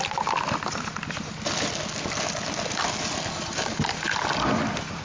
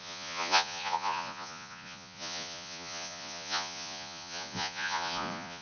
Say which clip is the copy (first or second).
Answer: second